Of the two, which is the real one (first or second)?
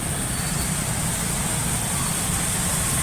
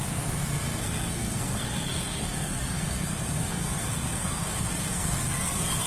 first